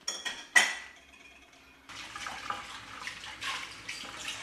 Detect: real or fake real